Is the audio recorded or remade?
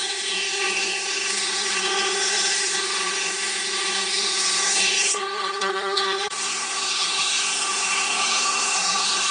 remade